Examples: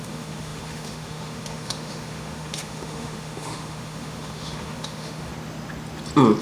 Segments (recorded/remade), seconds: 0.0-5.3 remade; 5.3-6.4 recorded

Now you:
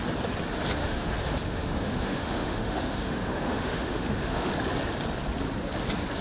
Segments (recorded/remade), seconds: 0.0-0.8 recorded; 0.8-4.5 remade; 4.5-6.2 recorded

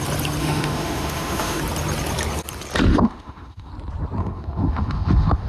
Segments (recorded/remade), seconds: 0.0-0.4 recorded; 0.4-1.6 remade; 1.6-2.9 recorded; 2.9-3.7 remade; 3.7-4.2 recorded; 4.2-5.5 remade

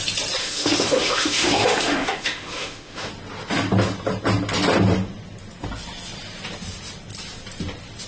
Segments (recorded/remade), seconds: 0.0-0.4 recorded; 0.4-3.1 remade; 3.1-8.1 recorded

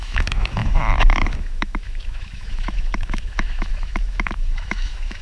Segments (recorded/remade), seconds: 0.0-5.2 remade

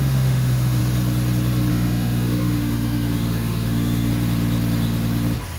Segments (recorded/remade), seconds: 0.0-0.8 remade; 0.8-1.7 recorded; 1.7-4.1 remade; 4.1-5.6 recorded

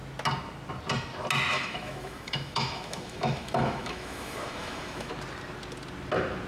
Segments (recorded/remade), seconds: 0.0-1.5 recorded; 1.5-5.1 remade; 5.1-6.5 recorded